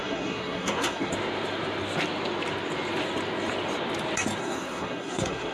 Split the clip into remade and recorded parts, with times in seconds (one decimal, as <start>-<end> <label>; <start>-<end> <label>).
0.0-1.1 remade; 1.1-4.4 recorded; 4.4-5.5 remade